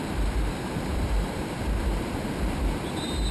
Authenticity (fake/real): fake